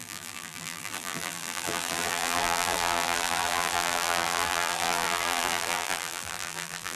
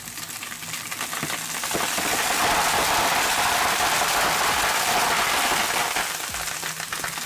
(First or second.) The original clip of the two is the second